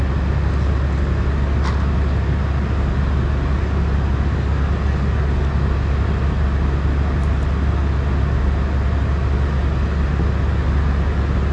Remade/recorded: recorded